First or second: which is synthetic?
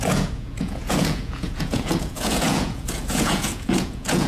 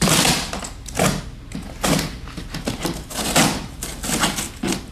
first